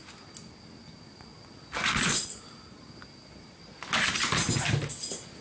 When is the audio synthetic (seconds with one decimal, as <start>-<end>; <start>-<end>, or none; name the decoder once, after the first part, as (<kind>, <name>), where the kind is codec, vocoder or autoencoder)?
none